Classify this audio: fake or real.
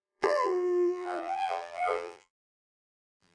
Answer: fake